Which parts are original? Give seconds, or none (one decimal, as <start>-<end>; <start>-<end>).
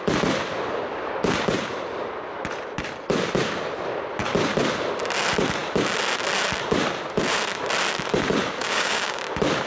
0.0-8.6; 9.2-9.7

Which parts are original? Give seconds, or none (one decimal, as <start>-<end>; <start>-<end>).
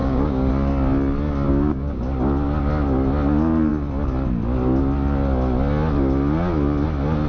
0.5-1.5; 2.0-7.3